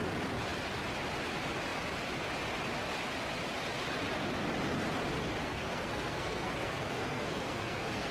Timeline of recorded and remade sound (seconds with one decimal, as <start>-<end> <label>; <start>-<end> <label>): 0.0-5.4 recorded; 5.4-8.1 remade